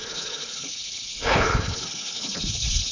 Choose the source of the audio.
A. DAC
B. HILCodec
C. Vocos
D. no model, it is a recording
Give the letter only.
B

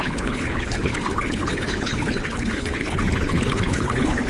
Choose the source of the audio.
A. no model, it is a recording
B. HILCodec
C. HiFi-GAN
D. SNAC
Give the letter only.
B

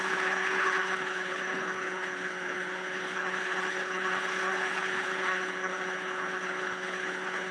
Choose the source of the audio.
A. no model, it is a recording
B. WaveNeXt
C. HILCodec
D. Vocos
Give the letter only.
C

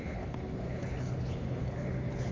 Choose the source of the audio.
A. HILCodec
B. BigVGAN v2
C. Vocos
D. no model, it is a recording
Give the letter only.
A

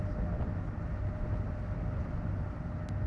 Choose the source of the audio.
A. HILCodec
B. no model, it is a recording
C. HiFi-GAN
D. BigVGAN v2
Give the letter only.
B